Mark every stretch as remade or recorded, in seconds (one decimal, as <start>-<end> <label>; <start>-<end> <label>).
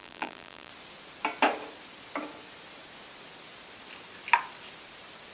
0.0-0.7 remade; 0.7-5.3 recorded